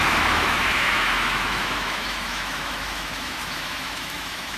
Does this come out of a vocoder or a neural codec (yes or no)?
yes